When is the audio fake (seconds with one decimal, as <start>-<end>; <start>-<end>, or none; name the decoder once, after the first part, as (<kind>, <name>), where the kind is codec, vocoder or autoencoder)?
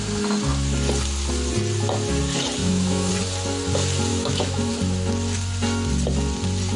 2.6-3.1 (autoencoder, DAC-VAE); 4.1-4.7